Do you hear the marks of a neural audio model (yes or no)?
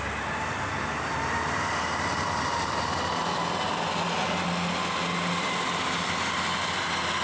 no